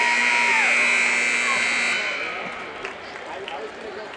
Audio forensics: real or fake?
real